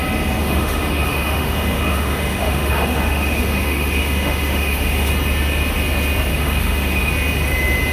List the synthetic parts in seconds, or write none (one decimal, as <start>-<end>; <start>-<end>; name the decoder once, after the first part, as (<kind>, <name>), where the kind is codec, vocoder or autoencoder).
0.4-5.1 (autoencoder, DAC-VAE); 6.3-7.1